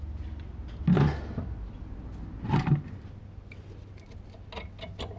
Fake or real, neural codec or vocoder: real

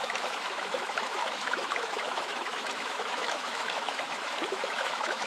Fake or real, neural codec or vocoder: fake, autoencoder, DAC-VAE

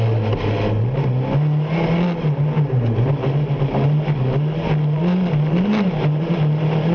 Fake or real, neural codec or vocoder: real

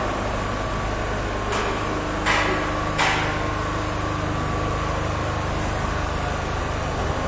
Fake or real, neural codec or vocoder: real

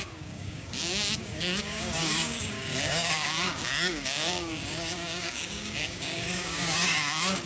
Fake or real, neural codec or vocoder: fake, codec, DAC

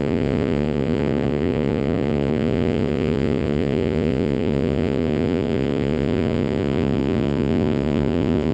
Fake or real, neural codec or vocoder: fake, vocoder, Vocos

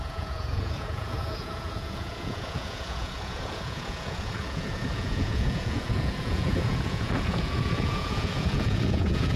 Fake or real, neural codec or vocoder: fake, vocoder, Vocos